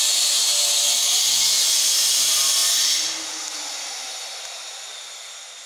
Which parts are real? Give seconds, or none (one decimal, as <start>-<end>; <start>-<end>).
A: 0.0-5.7